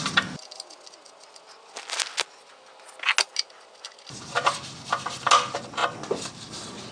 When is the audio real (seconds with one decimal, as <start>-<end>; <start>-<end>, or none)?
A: 0.0-6.9